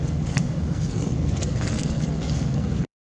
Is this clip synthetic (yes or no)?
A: yes